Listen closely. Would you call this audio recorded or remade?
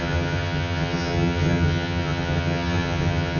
remade